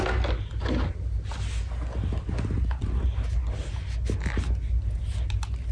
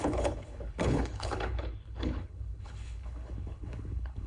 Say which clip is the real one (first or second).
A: first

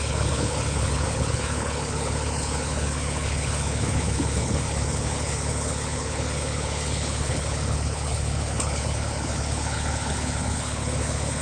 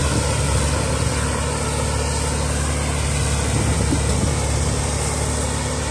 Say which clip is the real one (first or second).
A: second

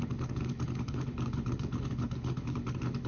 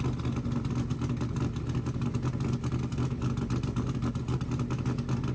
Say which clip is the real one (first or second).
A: second